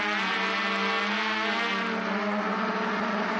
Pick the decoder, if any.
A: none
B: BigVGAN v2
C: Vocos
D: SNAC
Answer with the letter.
A